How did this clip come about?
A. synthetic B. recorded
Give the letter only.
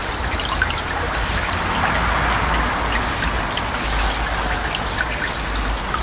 B